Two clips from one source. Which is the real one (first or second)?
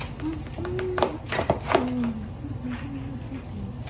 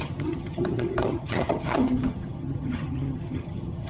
first